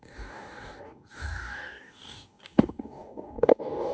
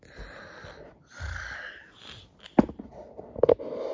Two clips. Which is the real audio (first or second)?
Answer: second